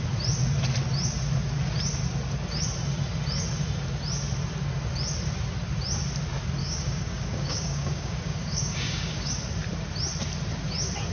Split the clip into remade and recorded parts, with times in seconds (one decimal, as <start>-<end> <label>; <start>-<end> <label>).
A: 0.0-6.6 recorded; 6.6-9.3 remade; 9.3-11.1 recorded

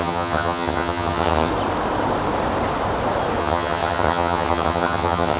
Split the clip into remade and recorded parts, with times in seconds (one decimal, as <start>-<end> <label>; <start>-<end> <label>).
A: 0.0-1.5 remade; 1.5-3.4 recorded; 3.4-5.4 remade

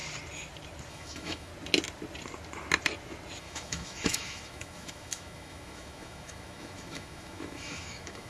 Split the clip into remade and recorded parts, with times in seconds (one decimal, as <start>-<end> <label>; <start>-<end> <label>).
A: 0.0-0.9 recorded; 0.9-1.5 remade; 1.5-3.4 recorded; 3.4-8.3 remade

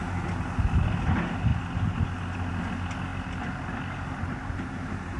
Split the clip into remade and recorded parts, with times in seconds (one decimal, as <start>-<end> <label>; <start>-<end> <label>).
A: 0.0-5.2 recorded